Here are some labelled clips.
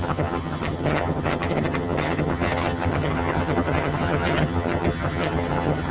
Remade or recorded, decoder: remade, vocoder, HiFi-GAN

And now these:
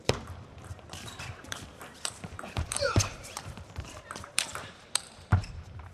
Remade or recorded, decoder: remade, vocoder, BigVGAN v2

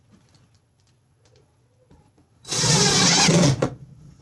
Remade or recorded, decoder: remade, vocoder, Vocos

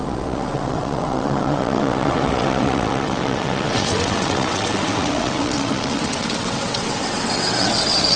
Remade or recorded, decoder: remade, vocoder, WaveNeXt